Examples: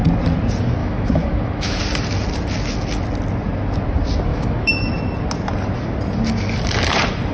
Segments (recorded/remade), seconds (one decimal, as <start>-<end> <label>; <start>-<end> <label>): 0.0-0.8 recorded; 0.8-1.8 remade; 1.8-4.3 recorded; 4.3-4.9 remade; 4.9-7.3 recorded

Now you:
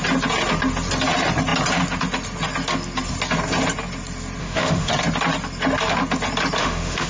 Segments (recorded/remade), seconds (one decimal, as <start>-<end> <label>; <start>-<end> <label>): 0.0-4.4 recorded; 4.4-4.9 remade; 4.9-6.6 recorded; 6.6-7.1 remade

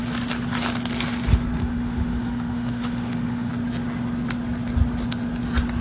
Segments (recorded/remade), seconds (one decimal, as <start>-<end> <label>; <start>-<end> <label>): 0.0-1.3 recorded; 1.3-3.5 remade; 3.5-5.8 recorded